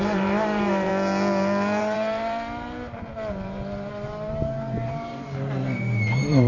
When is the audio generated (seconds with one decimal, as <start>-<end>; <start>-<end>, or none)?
0.0-0.9; 1.8-6.5